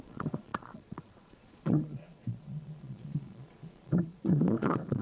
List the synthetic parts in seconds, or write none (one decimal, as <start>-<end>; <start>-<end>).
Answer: 0.0-5.0